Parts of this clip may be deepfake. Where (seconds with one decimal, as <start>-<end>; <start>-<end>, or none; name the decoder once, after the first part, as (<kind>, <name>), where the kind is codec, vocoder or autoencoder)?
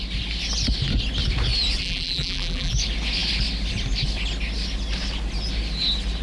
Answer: 1.8-2.7 (vocoder, BigVGAN v2)